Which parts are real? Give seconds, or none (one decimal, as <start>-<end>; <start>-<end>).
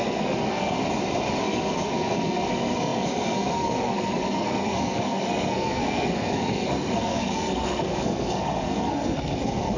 0.8-1.4